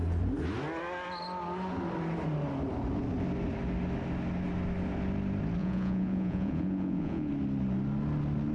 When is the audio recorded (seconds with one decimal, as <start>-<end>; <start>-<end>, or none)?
0.0-5.6; 7.3-8.5